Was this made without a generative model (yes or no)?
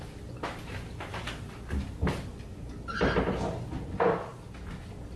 yes